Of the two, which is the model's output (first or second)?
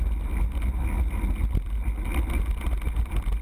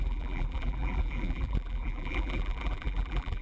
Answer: second